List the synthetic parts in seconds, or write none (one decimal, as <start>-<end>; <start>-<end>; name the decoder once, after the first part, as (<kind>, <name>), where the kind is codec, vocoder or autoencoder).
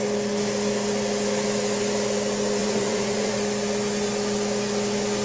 2.6-3.3 (vocoder, Vocos)